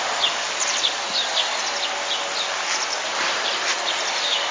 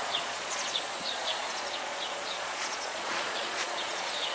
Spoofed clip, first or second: second